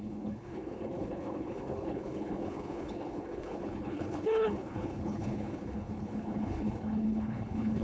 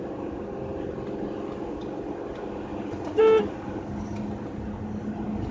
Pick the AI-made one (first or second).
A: first